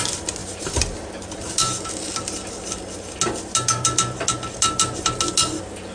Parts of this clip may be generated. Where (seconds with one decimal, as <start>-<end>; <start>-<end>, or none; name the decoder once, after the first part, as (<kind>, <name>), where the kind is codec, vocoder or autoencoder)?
0.4-1.1 (vocoder, BigVGAN v2)